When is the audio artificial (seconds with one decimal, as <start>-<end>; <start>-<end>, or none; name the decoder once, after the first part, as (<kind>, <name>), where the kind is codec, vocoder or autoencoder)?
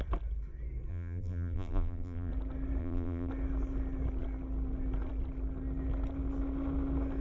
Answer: 0.9-2.3 (vocoder, BigVGAN v2); 2.8-3.3